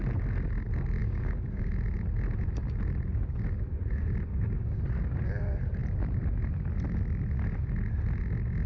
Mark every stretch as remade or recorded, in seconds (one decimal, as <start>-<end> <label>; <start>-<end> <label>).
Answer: 0.0-1.0 recorded; 1.0-1.7 remade; 1.7-4.3 recorded; 4.3-4.8 remade; 4.8-8.7 recorded